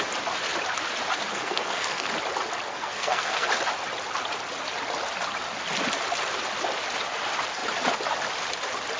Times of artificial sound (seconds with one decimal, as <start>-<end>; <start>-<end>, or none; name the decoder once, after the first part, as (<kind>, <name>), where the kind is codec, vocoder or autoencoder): 1.3-2.1 (codec, SNAC); 2.7-3.5

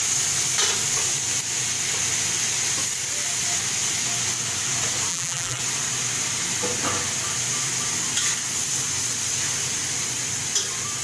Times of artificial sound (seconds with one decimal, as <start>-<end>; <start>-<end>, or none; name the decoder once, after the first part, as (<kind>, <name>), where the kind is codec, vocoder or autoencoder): 5.1-5.6 (vocoder, BigVGAN v2)